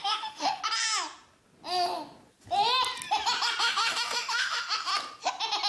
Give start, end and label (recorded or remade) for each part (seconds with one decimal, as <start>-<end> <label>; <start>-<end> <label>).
0.0-0.6 remade; 0.6-3.6 recorded; 3.6-4.9 remade; 4.9-5.7 recorded